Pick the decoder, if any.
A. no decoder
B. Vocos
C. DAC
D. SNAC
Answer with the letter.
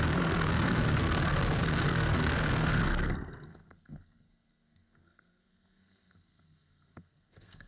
D